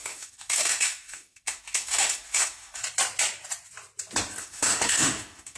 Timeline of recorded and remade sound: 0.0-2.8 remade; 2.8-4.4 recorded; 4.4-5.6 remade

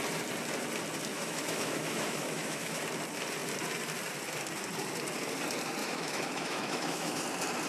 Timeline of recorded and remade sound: 0.0-1.1 recorded; 1.1-2.8 remade; 2.8-5.8 recorded; 5.8-7.1 remade; 7.1-7.7 recorded

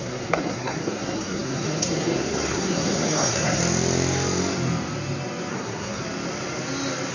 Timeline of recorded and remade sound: 0.0-3.6 remade; 3.6-5.5 recorded; 5.5-6.0 remade; 6.0-7.1 recorded